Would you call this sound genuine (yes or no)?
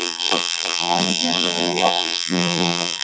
no